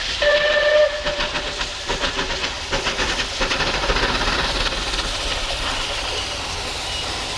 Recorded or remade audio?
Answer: recorded